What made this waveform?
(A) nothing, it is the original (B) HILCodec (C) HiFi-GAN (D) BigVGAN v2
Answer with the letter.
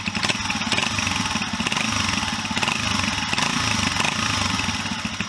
A